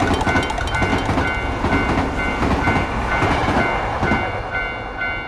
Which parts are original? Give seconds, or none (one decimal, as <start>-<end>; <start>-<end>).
0.0-5.3